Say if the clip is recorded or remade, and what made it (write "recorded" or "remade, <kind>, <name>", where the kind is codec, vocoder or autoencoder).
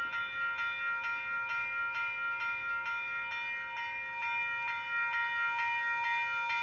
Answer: recorded